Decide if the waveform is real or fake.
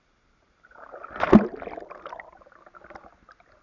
real